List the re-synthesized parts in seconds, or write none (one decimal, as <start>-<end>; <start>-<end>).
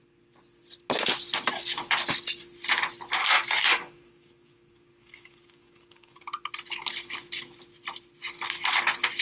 3.2-6.2